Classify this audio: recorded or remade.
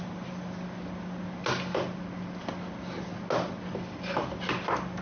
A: recorded